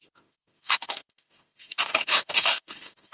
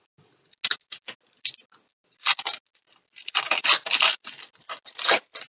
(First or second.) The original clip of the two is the second